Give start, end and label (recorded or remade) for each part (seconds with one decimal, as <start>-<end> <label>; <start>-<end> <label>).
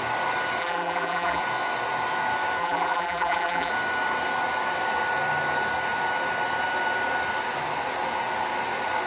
0.0-0.6 recorded; 0.6-1.4 remade; 1.4-2.6 recorded; 2.6-3.7 remade; 3.7-9.1 recorded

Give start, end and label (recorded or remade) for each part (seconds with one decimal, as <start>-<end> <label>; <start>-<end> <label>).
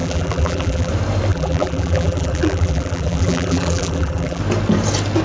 0.0-0.9 remade; 0.9-1.3 recorded; 1.3-4.4 remade; 4.4-5.2 recorded